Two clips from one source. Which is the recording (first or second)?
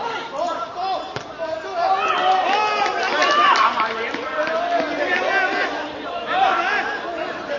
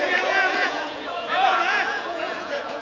first